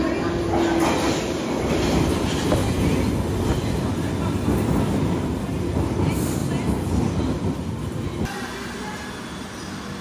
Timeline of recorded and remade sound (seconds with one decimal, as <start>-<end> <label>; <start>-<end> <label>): 0.0-10.0 recorded